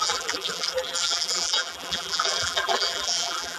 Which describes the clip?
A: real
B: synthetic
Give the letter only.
B